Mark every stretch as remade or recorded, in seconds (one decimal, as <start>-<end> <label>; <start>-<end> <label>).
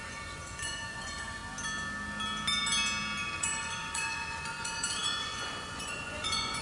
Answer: 0.0-1.4 remade; 1.4-3.4 recorded; 3.4-6.6 remade